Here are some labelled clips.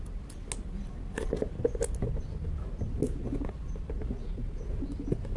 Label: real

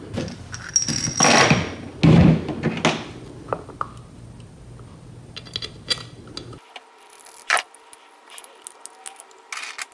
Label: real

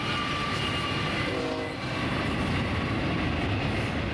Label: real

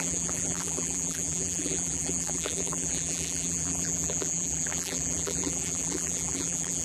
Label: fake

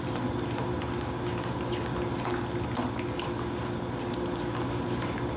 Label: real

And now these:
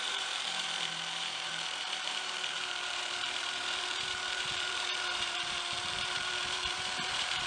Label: fake